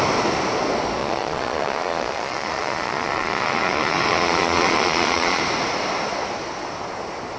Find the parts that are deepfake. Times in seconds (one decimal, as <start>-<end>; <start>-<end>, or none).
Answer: 1.0-5.4